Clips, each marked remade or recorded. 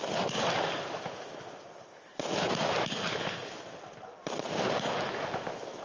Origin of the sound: recorded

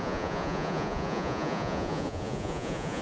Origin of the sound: remade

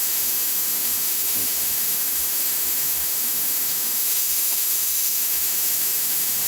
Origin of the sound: remade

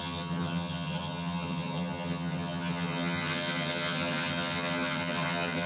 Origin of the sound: remade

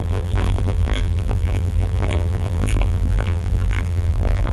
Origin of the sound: remade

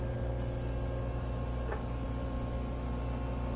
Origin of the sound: recorded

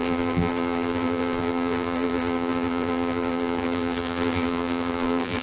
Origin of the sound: remade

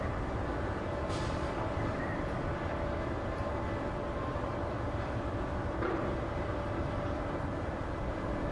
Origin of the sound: remade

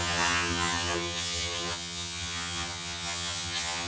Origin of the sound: remade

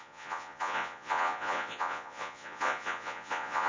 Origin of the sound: remade